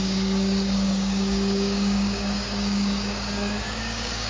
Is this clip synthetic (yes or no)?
yes